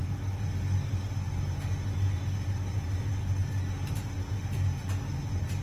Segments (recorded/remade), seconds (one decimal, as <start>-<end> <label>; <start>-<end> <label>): 0.0-5.6 recorded